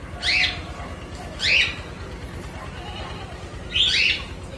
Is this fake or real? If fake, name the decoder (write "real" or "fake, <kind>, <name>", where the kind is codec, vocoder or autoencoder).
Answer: real